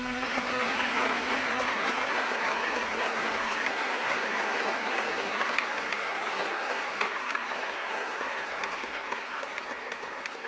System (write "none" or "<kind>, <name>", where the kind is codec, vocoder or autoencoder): codec, SNAC